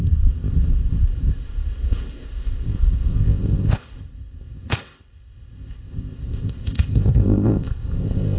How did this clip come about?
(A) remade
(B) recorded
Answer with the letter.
A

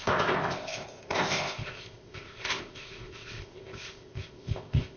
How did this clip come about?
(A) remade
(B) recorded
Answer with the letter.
A